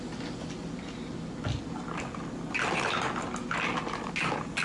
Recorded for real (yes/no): yes